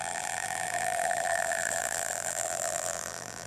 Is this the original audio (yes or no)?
no